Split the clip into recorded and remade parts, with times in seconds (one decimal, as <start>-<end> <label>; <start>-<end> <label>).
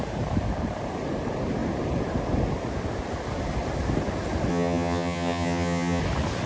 0.0-4.5 recorded; 4.5-6.0 remade; 6.0-6.5 recorded